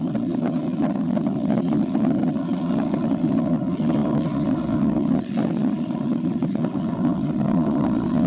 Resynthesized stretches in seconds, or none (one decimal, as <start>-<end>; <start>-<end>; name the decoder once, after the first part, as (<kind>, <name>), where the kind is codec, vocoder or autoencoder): 0.0-8.3 (vocoder, Vocos)